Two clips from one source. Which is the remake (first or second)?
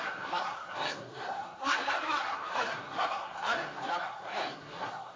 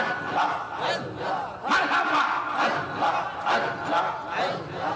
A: first